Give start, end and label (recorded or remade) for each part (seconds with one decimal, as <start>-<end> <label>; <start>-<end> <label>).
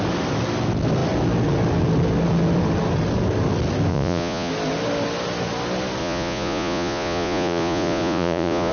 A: 0.0-3.9 recorded; 3.9-4.5 remade; 4.5-6.0 recorded; 6.0-8.7 remade